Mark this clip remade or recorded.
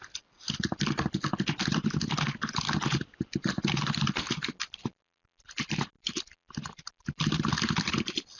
recorded